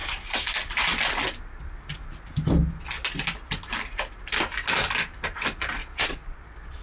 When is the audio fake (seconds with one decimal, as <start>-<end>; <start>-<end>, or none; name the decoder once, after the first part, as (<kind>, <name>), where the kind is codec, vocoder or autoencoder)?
5.8-6.8 (vocoder, Vocos)